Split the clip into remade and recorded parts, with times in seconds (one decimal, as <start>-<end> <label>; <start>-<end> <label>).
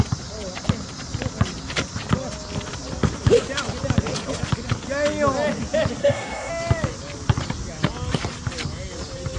0.0-6.0 recorded; 6.0-6.5 remade; 6.5-9.4 recorded